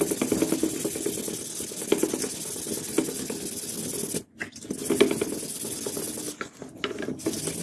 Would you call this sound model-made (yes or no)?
no